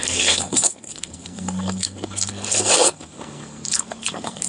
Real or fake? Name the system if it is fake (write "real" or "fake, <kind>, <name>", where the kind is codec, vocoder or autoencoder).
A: fake, codec, SNAC